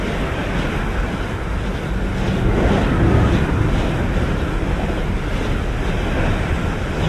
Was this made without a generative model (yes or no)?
yes